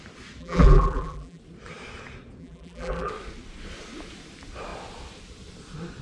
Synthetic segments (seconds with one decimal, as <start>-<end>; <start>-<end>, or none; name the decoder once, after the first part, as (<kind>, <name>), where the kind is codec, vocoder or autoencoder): 0.4-1.4 (vocoder, BigVGAN v2); 2.4-3.1